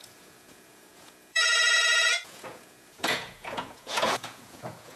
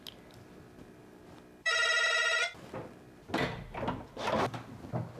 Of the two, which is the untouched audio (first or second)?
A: second